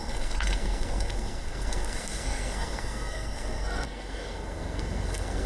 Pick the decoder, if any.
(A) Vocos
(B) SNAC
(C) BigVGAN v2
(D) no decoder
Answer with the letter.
B